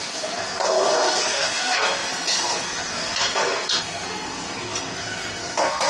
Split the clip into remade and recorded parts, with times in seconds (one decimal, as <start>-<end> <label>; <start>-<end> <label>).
0.0-5.9 remade